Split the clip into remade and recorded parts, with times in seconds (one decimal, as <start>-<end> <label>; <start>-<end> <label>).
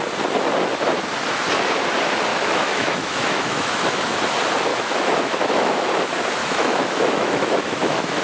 0.0-2.3 recorded; 2.3-4.2 remade; 4.2-4.7 recorded; 4.7-5.9 remade; 5.9-6.4 recorded; 6.4-8.2 remade